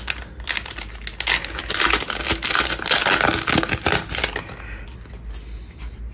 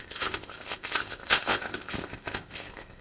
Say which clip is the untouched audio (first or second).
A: first